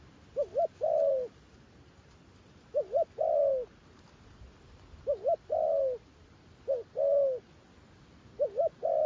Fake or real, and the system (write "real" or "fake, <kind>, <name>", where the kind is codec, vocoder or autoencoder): real